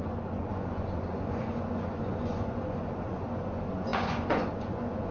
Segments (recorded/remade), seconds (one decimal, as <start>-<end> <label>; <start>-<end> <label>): 0.0-5.1 remade